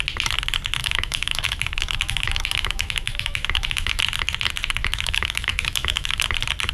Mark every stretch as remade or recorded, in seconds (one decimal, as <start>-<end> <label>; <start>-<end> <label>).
0.0-0.8 recorded; 0.8-4.0 remade; 4.0-4.8 recorded; 4.8-6.2 remade; 6.2-6.7 recorded

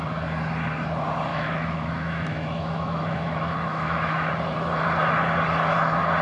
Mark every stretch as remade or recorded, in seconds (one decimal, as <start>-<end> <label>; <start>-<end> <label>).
0.0-1.3 recorded; 1.3-4.3 remade; 4.3-6.2 recorded

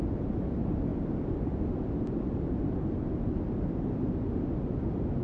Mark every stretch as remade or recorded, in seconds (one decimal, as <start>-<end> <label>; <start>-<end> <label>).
0.0-5.2 recorded

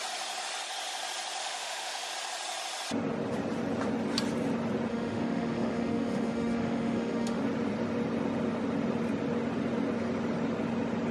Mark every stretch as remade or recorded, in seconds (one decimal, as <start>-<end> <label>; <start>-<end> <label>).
0.0-1.4 recorded; 1.4-2.1 remade; 2.1-4.9 recorded; 4.9-7.4 remade; 7.4-11.1 recorded

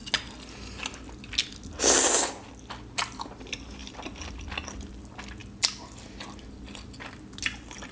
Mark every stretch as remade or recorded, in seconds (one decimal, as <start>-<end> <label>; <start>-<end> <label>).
0.0-7.9 recorded

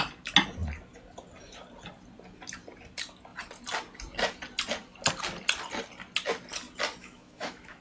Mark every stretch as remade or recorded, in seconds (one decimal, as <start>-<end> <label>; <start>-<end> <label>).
0.0-7.0 recorded; 7.0-7.8 remade

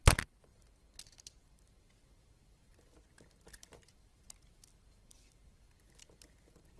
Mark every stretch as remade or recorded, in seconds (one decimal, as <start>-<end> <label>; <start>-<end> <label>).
0.0-6.8 recorded

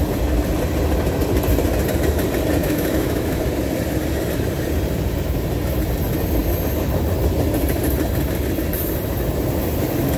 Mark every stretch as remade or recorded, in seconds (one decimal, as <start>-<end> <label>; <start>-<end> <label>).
0.0-2.6 recorded; 2.6-3.4 remade; 3.4-10.2 recorded